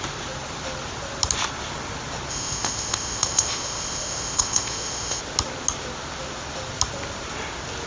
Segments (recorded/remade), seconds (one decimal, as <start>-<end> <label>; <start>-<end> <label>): 0.0-2.3 recorded; 2.3-5.2 remade; 5.2-7.9 recorded